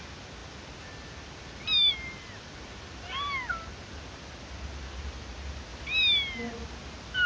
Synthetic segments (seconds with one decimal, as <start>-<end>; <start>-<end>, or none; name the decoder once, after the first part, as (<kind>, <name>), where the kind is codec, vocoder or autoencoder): none